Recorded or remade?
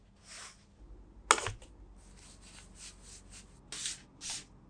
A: recorded